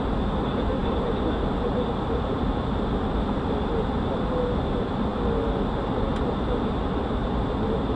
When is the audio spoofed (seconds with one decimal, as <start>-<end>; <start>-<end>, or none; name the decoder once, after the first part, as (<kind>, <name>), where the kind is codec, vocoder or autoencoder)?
7.2-8.0 (vocoder, BigVGAN v2)